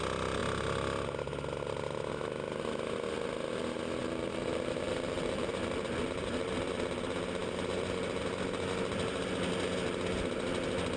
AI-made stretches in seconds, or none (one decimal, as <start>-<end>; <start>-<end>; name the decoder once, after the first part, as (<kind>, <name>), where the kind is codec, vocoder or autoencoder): 4.0-5.5 (vocoder, BigVGAN v2)